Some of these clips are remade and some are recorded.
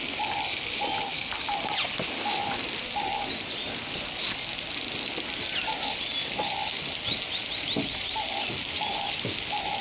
recorded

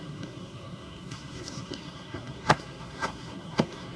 remade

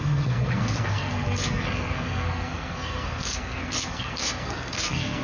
remade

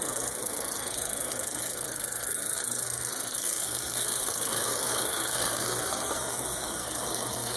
remade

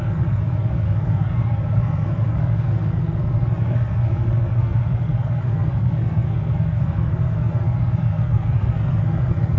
remade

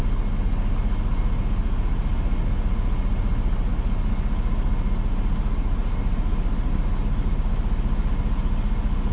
recorded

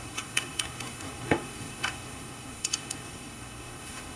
remade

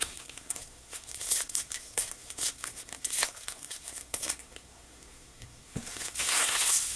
remade